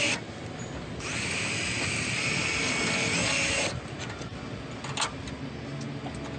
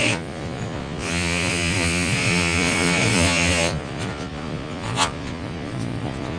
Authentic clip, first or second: first